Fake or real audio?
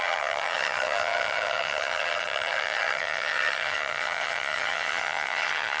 fake